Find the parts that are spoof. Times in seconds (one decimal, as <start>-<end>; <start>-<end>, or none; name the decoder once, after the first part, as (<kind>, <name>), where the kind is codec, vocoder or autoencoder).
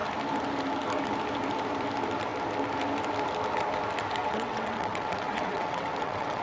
4.2-6.4 (vocoder, WaveNeXt)